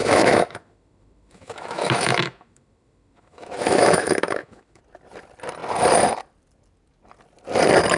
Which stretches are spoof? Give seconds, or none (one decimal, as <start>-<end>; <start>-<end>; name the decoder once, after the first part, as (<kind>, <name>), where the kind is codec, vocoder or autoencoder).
0.0-4.8 (autoencoder, DAC-VAE)